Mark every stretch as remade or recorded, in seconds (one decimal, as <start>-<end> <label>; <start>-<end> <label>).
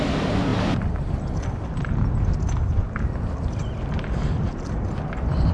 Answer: 0.0-5.5 recorded